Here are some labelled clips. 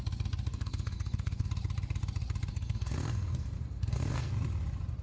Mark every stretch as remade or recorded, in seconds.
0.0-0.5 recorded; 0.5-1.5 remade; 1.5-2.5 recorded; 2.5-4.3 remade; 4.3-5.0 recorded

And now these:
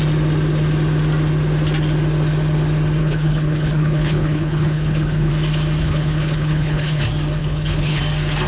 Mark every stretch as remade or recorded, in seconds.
0.0-3.0 recorded; 3.0-5.3 remade; 5.3-5.8 recorded; 5.8-7.0 remade; 7.0-7.4 recorded; 7.4-8.0 remade; 8.0-8.5 recorded